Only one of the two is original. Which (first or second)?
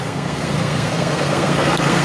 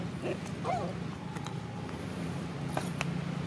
second